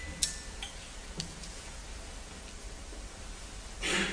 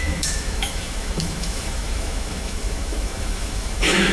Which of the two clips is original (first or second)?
first